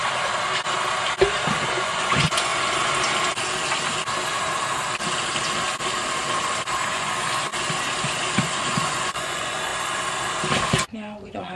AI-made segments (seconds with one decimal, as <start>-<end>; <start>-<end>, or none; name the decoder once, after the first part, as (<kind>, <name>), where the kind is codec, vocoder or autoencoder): 1.7-2.5 (vocoder, Vocos); 6.9-7.5; 8.0-9.7; 10.6-11.6

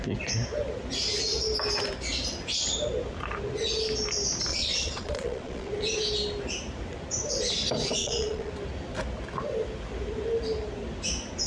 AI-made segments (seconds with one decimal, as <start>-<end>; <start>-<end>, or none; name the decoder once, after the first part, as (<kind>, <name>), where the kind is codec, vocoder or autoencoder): 4.5-5.7 (vocoder, Vocos); 8.0-8.5

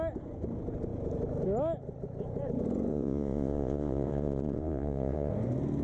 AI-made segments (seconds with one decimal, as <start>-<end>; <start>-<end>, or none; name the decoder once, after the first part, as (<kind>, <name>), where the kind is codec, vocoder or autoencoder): 2.9-5.3 (vocoder, Vocos)

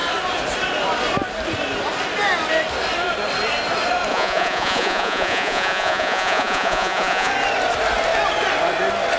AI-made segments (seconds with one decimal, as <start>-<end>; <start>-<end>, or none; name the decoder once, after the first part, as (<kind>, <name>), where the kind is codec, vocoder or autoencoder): 4.1-7.3 (vocoder, Vocos)